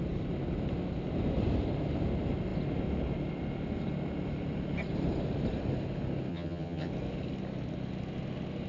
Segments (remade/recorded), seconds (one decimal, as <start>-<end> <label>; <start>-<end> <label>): 0.0-6.3 recorded; 6.3-6.9 remade; 6.9-8.7 recorded

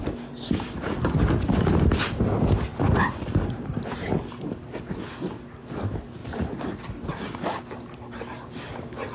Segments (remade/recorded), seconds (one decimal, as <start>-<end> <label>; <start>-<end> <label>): 0.0-9.1 recorded

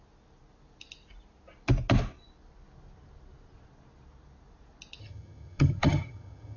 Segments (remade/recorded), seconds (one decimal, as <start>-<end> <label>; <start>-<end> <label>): 0.0-5.0 recorded; 5.0-6.6 remade

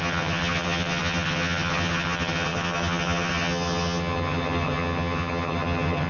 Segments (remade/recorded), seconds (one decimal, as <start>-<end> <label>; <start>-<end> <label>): 0.0-6.1 remade